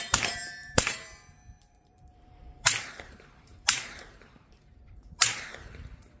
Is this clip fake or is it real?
fake